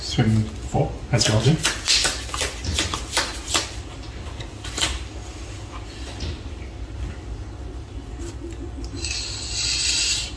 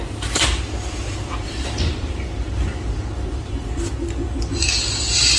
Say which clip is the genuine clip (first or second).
second